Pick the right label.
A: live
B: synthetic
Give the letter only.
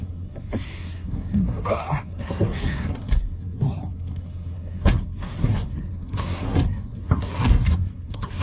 B